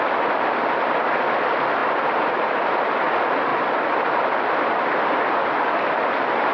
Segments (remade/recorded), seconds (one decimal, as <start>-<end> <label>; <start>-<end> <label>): 0.0-6.5 recorded